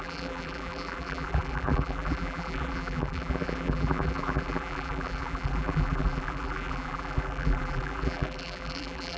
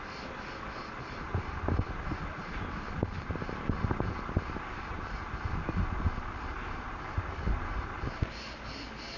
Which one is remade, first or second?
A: first